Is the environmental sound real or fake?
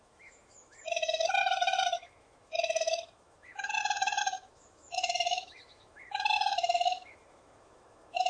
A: fake